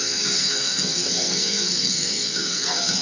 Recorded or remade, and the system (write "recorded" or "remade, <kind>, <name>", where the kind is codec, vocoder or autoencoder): remade, codec, SNAC